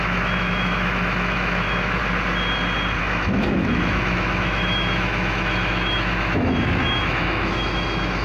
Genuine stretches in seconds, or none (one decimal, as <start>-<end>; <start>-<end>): 2.0-3.0